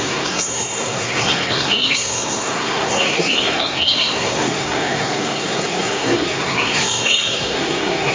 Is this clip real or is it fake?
fake